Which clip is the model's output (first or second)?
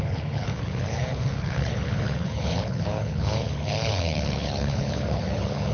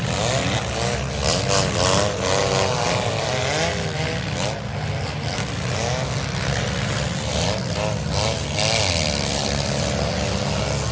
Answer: first